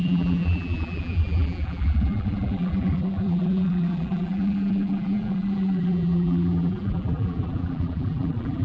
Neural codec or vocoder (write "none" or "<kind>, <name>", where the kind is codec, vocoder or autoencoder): vocoder, BigVGAN v2